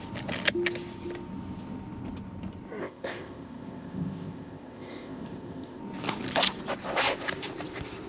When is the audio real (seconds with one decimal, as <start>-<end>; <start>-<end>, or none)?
0.0-2.8; 5.8-8.1